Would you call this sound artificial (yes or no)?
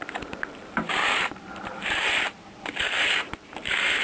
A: yes